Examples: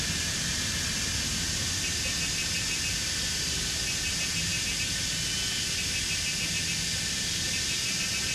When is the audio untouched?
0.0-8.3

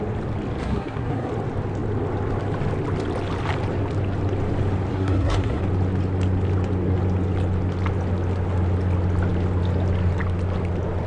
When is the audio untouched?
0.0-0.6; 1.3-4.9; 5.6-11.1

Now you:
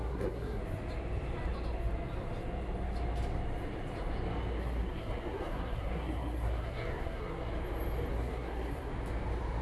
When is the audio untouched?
0.6-4.6; 7.5-8.1; 8.9-9.6